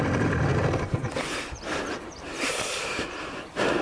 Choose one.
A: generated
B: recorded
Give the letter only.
A